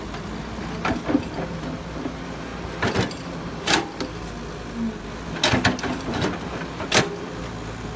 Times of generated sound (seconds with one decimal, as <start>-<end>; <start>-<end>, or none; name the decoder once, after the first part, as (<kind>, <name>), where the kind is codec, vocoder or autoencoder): none